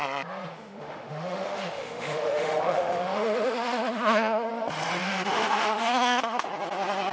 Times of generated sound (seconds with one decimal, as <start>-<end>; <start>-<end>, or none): 0.5-4.5; 5.0-6.5